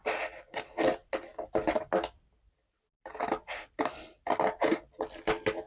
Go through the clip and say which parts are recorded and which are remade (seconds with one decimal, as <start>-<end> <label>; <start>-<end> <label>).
0.0-5.7 recorded